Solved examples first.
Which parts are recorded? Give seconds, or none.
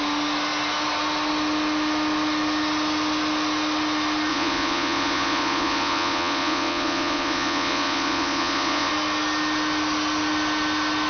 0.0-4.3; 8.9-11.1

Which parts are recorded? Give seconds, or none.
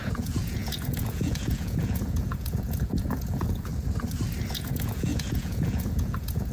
3.7-4.5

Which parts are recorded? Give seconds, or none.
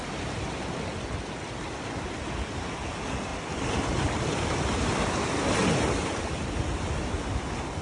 0.0-7.8